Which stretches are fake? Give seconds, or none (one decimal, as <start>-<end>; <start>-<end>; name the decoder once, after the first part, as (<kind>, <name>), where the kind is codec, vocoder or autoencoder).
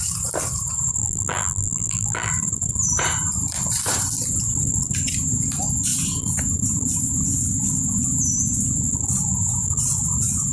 1.0-2.3 (vocoder, BigVGAN v2)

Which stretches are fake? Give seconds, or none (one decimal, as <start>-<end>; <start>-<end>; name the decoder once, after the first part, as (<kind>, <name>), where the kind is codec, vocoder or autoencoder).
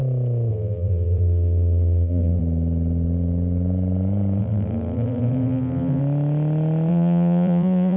0.5-2.4 (vocoder, BigVGAN v2); 4.4-6.0; 6.9-8.0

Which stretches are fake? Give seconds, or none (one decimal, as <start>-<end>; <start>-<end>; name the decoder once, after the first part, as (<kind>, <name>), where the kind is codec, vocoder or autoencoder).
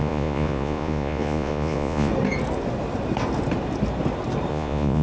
0.0-2.1 (vocoder, Vocos); 4.5-5.0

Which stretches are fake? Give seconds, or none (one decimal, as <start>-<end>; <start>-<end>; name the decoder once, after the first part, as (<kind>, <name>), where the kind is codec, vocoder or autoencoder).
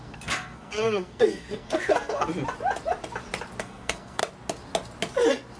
0.0-2.3 (codec, SNAC); 3.6-4.2